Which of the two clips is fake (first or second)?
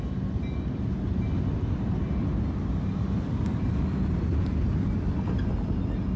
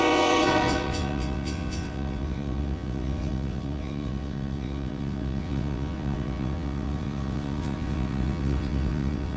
second